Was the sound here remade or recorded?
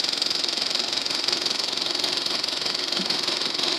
remade